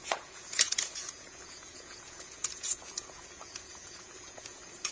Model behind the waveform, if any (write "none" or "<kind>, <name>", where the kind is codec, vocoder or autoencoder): vocoder, Vocos